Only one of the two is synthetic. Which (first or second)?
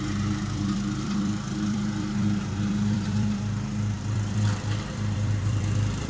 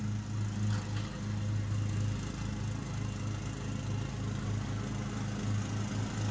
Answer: first